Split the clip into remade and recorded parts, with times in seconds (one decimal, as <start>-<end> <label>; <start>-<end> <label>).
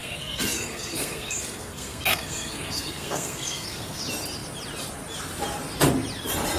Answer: 0.0-4.0 remade; 4.0-6.6 recorded